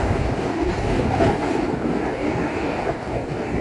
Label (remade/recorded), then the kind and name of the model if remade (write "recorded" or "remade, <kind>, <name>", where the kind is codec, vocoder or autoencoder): remade, codec, DAC